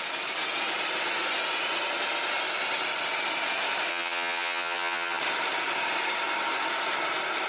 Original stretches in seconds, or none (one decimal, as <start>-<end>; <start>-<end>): 0.0-3.9; 5.2-7.5